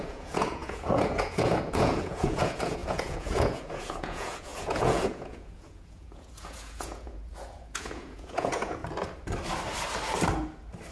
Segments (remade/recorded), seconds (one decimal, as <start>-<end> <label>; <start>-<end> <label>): 0.0-8.8 remade; 8.8-10.9 recorded